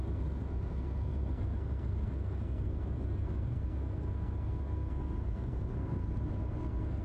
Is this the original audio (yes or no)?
no